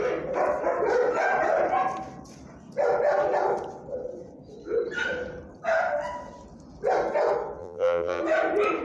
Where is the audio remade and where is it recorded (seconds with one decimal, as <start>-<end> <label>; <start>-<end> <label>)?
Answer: 0.0-7.6 recorded; 7.6-8.2 remade; 8.2-8.8 recorded